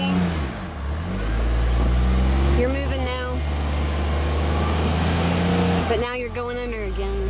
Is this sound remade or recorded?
recorded